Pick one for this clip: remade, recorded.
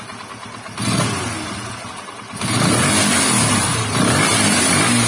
recorded